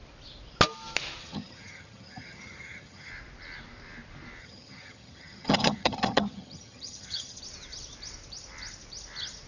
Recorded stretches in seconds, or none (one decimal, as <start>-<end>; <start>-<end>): 0.0-1.2; 3.1-4.4; 7.4-9.5